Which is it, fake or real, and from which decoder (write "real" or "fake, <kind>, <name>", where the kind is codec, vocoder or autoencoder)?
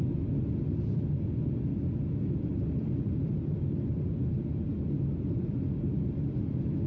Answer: real